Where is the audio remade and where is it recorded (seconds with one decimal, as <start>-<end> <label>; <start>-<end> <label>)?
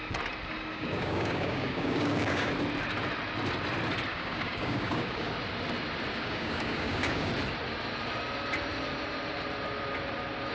0.0-0.7 recorded; 0.7-2.5 remade; 2.5-4.1 recorded; 4.1-5.3 remade; 5.3-6.1 recorded; 6.1-7.3 remade; 7.3-10.5 recorded